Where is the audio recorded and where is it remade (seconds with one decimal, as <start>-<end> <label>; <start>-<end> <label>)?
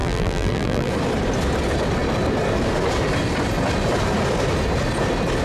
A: 0.0-0.9 remade; 0.9-5.4 recorded